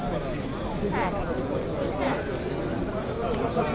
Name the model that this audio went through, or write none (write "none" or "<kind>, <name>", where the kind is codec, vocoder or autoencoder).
none